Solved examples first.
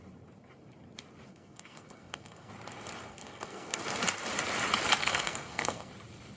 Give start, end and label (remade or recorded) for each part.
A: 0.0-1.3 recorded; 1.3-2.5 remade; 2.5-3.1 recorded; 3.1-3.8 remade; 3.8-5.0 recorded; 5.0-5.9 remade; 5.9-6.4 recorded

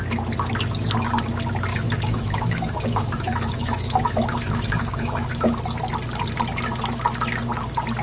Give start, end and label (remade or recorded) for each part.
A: 0.0-1.7 recorded; 1.7-5.6 remade; 5.6-8.0 recorded

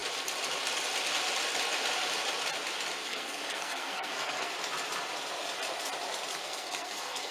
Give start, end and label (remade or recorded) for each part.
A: 0.0-3.0 recorded; 3.0-4.5 remade; 4.5-6.4 recorded; 6.4-7.3 remade

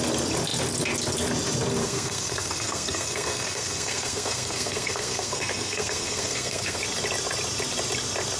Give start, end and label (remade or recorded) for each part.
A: 0.0-1.8 recorded; 1.8-6.8 remade; 6.8-8.4 recorded